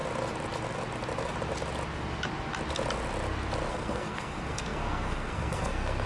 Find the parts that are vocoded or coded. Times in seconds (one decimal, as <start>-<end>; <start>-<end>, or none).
3.7-6.1